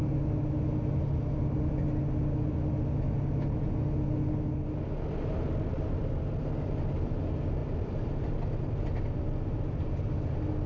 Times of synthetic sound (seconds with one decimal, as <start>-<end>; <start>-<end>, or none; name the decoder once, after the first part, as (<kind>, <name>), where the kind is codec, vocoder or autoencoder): none